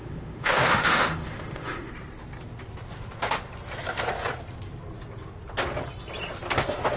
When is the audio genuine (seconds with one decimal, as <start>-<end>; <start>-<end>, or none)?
1.9-7.0